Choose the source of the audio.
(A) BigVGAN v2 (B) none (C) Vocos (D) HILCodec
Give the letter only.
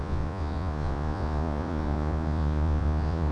C